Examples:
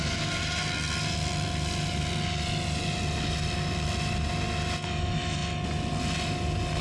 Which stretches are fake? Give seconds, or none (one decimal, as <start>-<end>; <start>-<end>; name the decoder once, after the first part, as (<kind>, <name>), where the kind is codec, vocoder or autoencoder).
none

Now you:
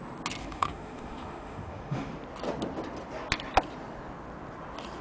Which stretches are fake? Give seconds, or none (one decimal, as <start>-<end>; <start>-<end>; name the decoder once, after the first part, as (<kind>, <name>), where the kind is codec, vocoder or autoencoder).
0.4-2.1 (autoencoder, DAC-VAE)

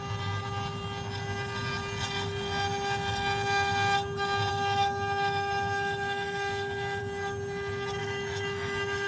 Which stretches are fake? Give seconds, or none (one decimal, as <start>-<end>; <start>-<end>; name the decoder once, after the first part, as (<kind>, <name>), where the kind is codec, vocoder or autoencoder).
4.5-7.0 (autoencoder, DAC-VAE); 8.0-9.1

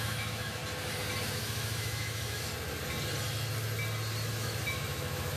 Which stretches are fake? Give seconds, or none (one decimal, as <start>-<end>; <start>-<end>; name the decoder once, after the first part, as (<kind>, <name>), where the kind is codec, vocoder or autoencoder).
0.0-0.6 (autoencoder, DAC-VAE); 1.2-2.5; 4.3-5.4